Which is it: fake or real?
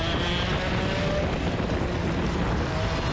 real